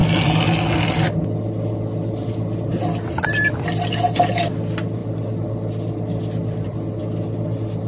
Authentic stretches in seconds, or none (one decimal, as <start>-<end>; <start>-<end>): 0.0-7.9